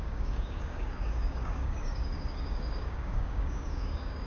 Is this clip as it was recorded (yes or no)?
no